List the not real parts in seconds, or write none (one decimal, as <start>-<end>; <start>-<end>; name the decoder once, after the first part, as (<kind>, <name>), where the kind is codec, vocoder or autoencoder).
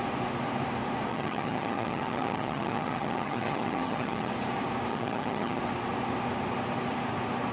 1.1-4.3 (vocoder, HiFi-GAN); 4.9-5.6